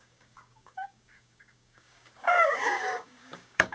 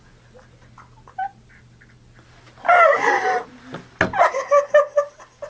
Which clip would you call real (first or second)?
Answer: second